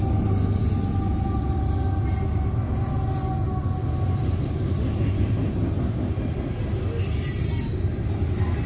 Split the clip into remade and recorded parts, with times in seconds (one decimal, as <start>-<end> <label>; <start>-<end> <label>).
0.0-8.7 recorded